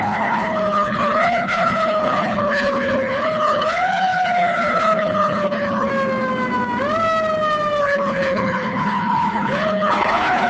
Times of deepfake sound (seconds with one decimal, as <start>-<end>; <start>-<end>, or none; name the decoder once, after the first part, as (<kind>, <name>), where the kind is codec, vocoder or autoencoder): 0.0-5.9 (codec, HILCodec); 7.8-10.5